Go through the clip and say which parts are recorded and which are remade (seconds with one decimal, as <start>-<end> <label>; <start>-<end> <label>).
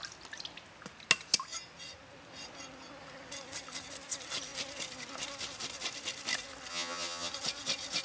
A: 0.0-6.7 recorded; 6.7-7.3 remade; 7.3-8.0 recorded